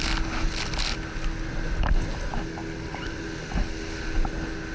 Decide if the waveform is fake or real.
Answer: real